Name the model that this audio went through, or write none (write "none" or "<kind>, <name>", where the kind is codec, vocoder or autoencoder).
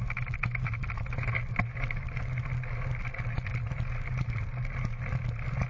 none